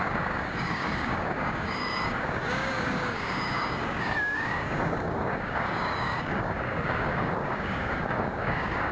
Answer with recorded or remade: remade